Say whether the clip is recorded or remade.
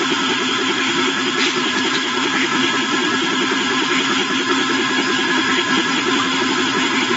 recorded